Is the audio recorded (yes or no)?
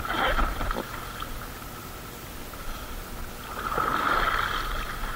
yes